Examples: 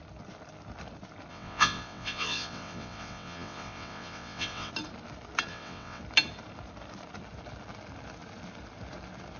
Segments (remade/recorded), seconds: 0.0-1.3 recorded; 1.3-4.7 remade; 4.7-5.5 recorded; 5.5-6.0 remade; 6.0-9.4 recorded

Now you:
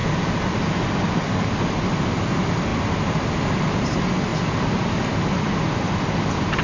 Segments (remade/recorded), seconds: 0.0-6.6 recorded

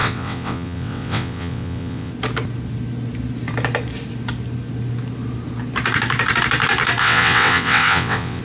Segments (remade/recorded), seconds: 0.0-2.1 remade; 2.1-7.0 recorded; 7.0-8.4 remade

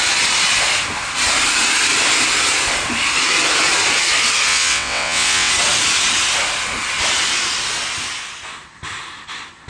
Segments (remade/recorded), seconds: 0.0-4.5 recorded; 4.5-5.5 remade; 5.5-9.7 recorded

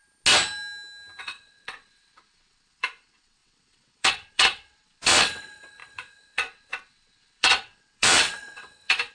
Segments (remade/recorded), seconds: 0.0-1.2 recorded; 1.2-9.1 remade

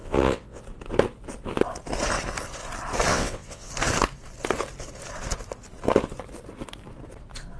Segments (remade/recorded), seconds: 0.0-0.6 remade; 0.6-3.1 recorded; 3.1-3.7 remade; 3.7-7.6 recorded

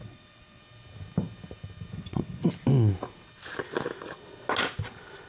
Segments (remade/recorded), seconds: 0.0-0.6 remade; 0.6-1.9 recorded; 1.9-2.4 remade; 2.4-5.3 recorded

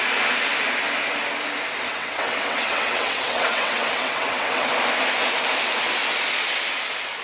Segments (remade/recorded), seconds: 0.0-1.9 recorded; 1.9-4.7 remade; 4.7-7.2 recorded